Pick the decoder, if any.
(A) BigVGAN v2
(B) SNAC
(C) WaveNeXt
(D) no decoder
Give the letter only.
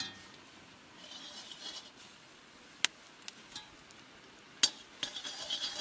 D